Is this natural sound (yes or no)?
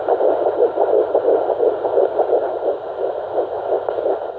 yes